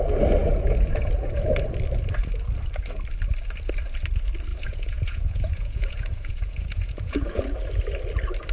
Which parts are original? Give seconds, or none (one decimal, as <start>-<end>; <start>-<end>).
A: 0.0-0.4; 1.1-4.5; 7.4-8.5